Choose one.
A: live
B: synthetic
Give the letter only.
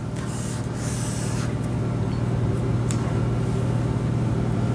A